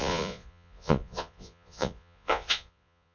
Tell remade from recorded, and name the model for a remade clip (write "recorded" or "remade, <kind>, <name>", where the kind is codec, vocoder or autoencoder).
remade, vocoder, Vocos